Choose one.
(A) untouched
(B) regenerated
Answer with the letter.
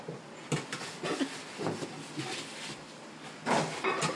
A